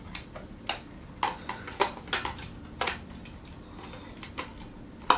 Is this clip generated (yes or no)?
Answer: no